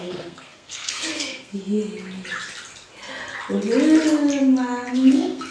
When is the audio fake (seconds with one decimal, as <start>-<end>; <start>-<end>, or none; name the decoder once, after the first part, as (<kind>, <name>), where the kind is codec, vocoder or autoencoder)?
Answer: 0.0-1.6 (codec, SNAC); 4.9-5.5